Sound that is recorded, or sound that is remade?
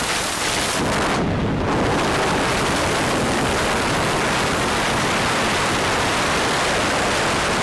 recorded